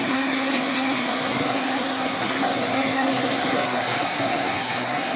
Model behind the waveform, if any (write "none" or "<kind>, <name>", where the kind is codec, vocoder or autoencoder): codec, SNAC